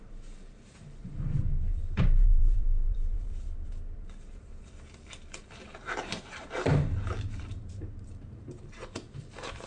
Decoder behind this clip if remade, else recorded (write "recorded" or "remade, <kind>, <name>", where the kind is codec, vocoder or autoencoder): remade, vocoder, BigVGAN v2